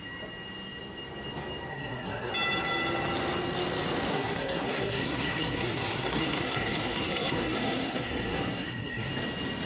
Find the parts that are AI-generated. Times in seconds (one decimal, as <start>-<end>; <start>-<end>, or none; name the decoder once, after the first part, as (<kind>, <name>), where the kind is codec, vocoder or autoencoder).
1.7-2.3 (codec, SNAC); 4.1-9.1